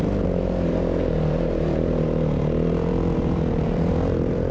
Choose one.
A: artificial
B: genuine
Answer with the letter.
A